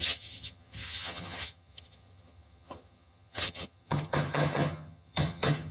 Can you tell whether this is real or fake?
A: fake